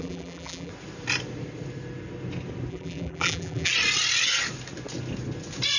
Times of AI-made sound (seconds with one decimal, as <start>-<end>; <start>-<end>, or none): 0.0-0.7; 2.7-3.7